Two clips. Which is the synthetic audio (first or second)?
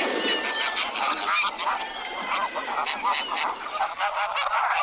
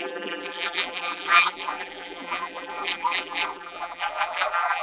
second